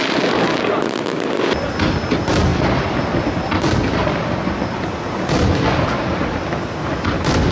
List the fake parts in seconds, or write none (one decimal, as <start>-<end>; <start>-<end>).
none